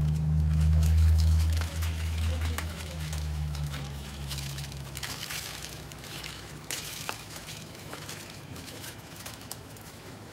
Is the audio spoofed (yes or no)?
yes